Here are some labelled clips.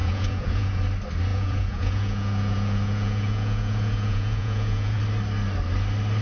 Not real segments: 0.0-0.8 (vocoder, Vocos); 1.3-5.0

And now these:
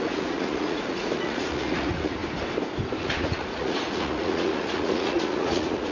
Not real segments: 0.0-2.2 (vocoder, Vocos); 3.0-5.9

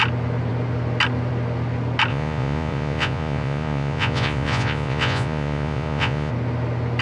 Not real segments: 2.1-6.3 (vocoder, Vocos)

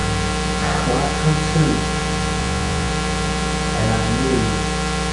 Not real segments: 2.4-2.9 (vocoder, Vocos)

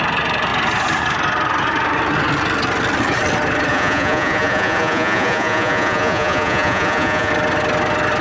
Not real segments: 3.7-7.3 (vocoder, Vocos)

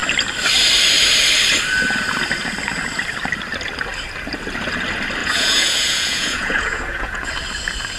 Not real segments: 5.2-7.3 (vocoder, Vocos)

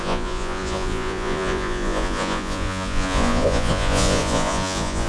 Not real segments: 0.0-5.1 (vocoder, Vocos)

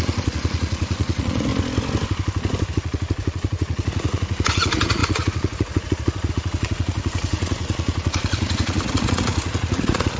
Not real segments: 0.0-1.5 (vocoder, Vocos); 2.7-10.2